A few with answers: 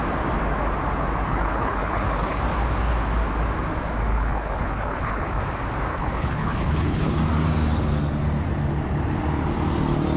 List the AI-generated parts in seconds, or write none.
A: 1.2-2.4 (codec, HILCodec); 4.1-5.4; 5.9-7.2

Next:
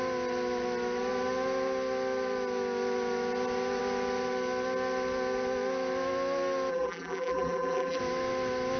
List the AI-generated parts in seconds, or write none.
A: 6.7-8.0 (vocoder, BigVGAN v2)

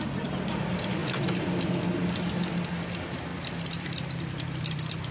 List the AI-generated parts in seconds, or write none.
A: 0.0-1.0 (vocoder, BigVGAN v2); 2.7-5.1

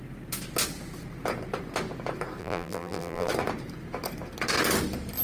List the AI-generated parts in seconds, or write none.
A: 2.4-3.3 (vocoder, BigVGAN v2)

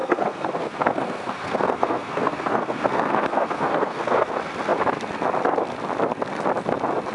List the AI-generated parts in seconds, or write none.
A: 0.0-4.3 (codec, SNAC)